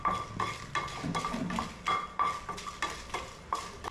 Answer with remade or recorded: recorded